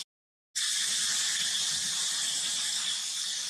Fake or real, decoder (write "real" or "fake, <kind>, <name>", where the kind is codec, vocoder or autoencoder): real